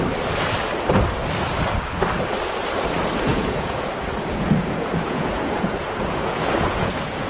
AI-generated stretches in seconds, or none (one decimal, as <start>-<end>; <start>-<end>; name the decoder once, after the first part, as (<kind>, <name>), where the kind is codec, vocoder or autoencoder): 3.3-7.3 (vocoder, Vocos)